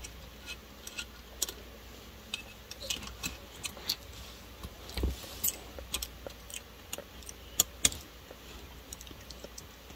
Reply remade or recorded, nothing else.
recorded